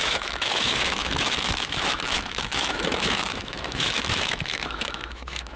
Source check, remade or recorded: remade